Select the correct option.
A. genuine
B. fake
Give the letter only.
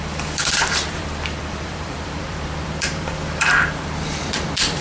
B